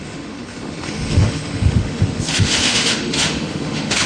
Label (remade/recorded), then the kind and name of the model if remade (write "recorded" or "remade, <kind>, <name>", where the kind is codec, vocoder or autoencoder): remade, autoencoder, DAC-VAE